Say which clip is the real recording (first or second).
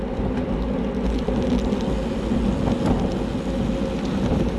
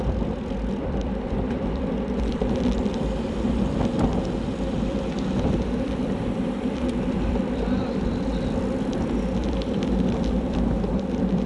first